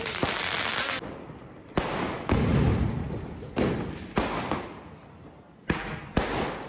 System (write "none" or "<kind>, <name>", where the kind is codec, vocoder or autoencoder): none